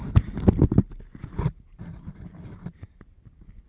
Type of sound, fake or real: real